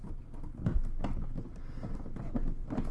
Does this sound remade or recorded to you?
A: recorded